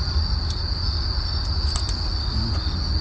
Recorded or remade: recorded